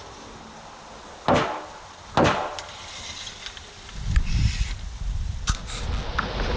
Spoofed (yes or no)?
no